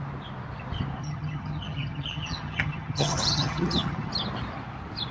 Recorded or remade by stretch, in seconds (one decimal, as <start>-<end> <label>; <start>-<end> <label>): 0.0-1.0 recorded; 1.0-4.1 remade; 4.1-5.1 recorded